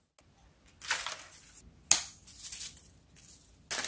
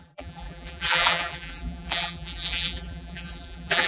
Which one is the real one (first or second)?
first